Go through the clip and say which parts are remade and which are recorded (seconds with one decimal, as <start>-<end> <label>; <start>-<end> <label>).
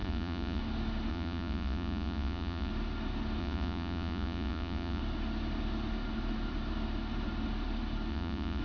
0.0-0.6 remade; 0.6-1.1 recorded; 1.1-2.7 remade; 2.7-3.4 recorded; 3.4-5.0 remade; 5.0-8.1 recorded; 8.1-8.6 remade